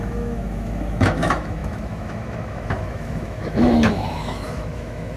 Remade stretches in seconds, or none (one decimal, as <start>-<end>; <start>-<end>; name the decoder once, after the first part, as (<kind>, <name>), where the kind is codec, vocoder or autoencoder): 0.0-5.2 (autoencoder, DAC-VAE)